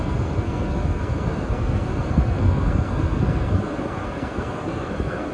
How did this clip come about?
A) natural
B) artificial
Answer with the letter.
B